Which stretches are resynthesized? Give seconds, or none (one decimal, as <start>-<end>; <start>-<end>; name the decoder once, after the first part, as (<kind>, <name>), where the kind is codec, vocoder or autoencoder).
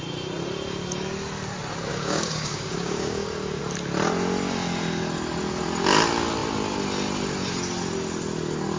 1.9-3.6 (codec, DAC)